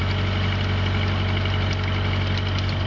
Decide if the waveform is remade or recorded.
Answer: recorded